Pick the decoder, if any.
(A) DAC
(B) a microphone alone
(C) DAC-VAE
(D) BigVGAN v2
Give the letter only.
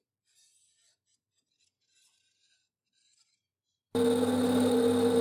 B